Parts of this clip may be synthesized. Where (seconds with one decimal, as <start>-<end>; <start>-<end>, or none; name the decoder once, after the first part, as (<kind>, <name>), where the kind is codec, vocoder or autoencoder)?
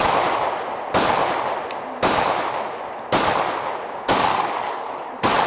4.3-5.1 (codec, DAC)